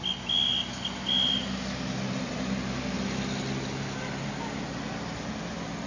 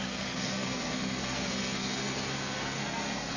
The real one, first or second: first